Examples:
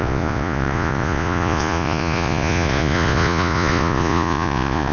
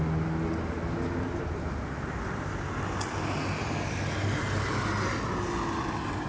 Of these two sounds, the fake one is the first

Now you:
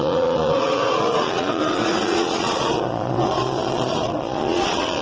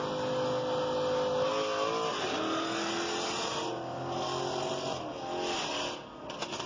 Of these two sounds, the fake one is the first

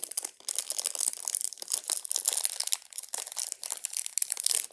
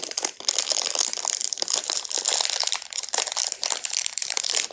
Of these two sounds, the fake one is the second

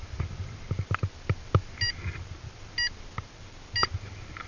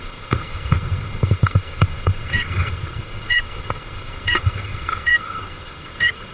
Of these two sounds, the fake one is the second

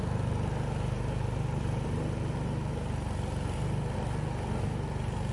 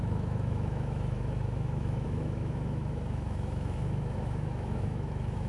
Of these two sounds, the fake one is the second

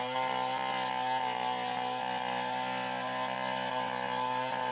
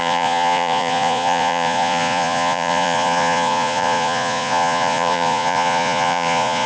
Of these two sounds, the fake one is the second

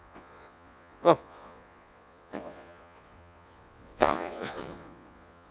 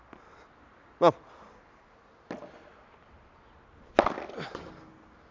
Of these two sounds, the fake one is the first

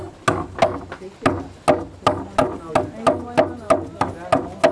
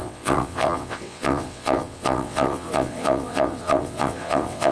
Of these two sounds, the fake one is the second